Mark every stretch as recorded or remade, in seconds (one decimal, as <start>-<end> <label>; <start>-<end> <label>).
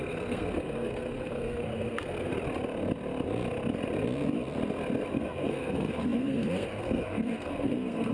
0.0-2.3 remade; 2.3-5.1 recorded; 5.1-8.1 remade